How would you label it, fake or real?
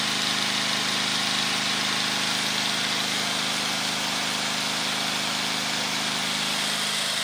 real